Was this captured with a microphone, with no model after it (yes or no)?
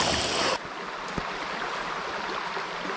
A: yes